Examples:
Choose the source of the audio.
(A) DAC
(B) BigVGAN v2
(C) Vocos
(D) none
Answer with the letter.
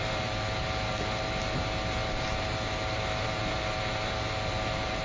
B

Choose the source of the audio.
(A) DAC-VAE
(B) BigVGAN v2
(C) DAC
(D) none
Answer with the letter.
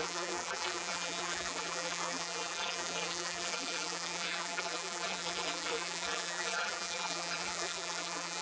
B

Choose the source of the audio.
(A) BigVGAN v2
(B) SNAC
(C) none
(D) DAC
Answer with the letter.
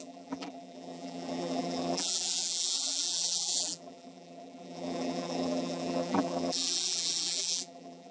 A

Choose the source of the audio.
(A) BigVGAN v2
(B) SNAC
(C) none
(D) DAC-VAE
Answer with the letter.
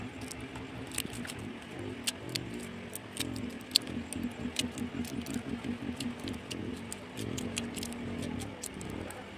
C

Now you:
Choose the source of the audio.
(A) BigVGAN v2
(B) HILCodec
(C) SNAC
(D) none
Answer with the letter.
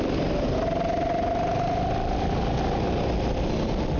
D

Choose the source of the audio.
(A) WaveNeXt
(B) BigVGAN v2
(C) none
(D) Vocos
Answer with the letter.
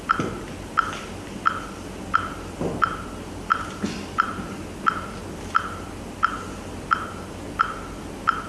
C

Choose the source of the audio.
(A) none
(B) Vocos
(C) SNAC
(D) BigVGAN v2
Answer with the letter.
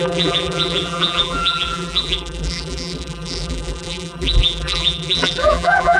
D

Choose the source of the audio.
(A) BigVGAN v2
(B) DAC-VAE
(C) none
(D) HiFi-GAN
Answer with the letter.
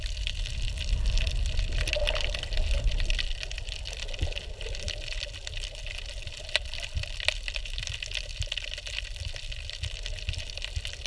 C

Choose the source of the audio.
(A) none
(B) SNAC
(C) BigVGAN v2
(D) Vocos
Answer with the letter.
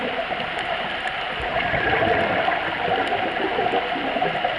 C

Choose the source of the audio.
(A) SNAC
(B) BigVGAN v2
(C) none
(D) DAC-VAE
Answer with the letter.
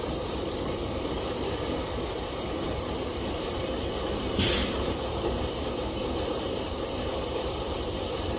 B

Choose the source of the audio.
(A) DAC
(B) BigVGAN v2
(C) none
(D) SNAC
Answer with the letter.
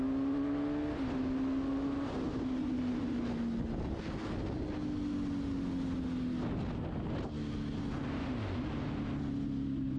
C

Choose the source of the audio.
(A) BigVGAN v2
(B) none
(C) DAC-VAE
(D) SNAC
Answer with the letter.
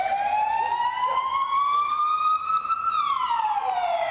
A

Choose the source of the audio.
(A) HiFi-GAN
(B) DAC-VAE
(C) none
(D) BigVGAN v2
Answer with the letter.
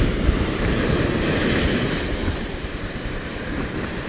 D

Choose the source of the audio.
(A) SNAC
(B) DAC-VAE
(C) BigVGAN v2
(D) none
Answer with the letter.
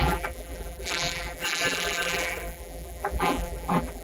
C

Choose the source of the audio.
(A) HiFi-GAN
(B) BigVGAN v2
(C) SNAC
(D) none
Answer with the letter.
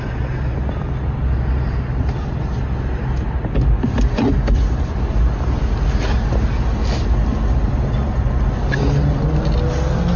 D